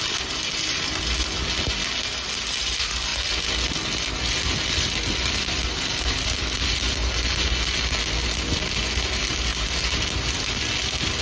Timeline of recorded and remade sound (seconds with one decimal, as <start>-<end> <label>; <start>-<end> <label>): 0.0-11.2 recorded